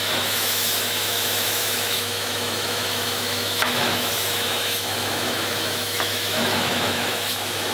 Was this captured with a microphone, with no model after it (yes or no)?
no